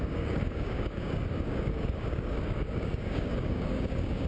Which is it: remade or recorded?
remade